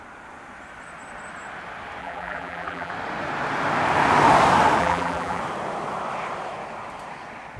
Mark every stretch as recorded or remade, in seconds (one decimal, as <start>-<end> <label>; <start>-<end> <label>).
0.0-2.0 recorded; 2.0-2.9 remade; 2.9-4.8 recorded; 4.8-5.4 remade; 5.4-7.6 recorded